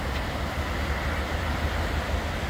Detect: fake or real real